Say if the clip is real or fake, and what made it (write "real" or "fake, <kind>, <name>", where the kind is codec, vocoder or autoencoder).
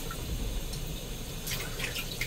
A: fake, vocoder, BigVGAN v2